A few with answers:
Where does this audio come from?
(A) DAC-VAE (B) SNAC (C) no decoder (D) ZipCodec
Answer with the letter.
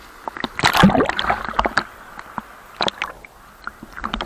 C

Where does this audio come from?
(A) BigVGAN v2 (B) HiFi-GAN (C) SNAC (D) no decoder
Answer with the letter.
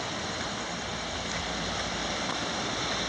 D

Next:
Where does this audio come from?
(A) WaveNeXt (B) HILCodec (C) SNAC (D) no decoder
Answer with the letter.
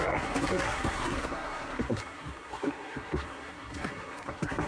C